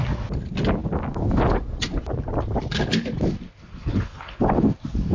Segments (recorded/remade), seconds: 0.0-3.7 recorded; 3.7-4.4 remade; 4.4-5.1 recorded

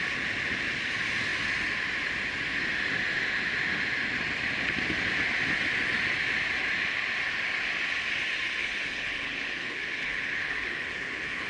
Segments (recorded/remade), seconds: 0.0-8.6 recorded; 8.6-11.5 remade

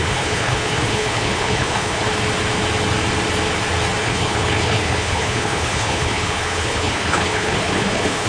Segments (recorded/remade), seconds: 0.0-2.1 remade; 2.1-4.0 recorded; 4.0-8.3 remade

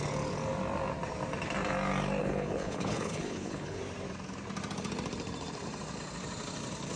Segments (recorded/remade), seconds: 0.0-2.2 recorded; 2.2-3.8 remade; 3.8-7.0 recorded

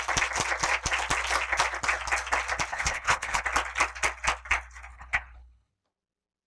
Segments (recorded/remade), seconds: 0.0-2.7 recorded; 2.7-3.4 remade; 3.4-4.9 recorded; 4.9-5.7 remade; 5.7-6.5 recorded

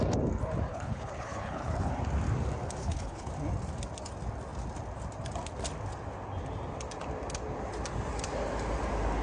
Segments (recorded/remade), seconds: 0.0-0.7 recorded; 0.7-1.9 remade; 1.9-2.8 recorded; 2.8-3.3 remade; 3.3-9.2 recorded